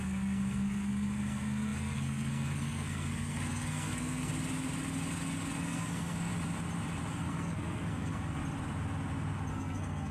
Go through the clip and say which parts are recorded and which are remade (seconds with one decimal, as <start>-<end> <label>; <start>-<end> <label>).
0.0-4.3 remade; 4.3-5.6 recorded; 5.6-6.3 remade; 6.3-7.1 recorded; 7.1-8.4 remade; 8.4-9.5 recorded; 9.5-10.1 remade